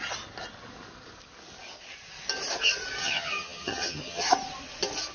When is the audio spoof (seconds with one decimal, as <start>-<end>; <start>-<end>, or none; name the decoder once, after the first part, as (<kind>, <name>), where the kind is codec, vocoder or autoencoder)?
3.0-4.3 (vocoder, HiFi-GAN)